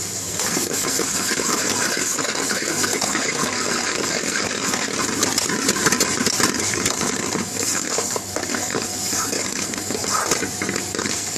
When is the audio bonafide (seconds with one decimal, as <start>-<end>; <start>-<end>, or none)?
4.9-6.6; 10.2-11.0